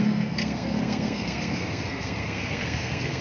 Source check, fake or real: fake